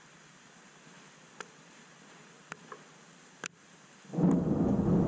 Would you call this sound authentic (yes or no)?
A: yes